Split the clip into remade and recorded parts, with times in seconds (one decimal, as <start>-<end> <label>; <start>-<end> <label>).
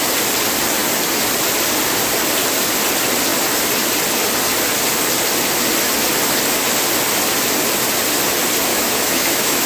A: 0.0-8.7 recorded; 8.7-9.7 remade